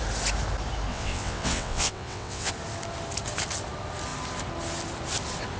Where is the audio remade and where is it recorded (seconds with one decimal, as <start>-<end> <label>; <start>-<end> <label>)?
0.0-0.9 recorded; 0.9-2.5 remade; 2.5-5.6 recorded